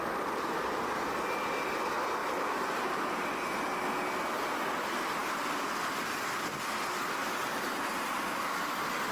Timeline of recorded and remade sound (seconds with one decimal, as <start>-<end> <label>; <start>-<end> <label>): 0.0-2.2 recorded; 2.2-3.4 remade; 3.4-9.1 recorded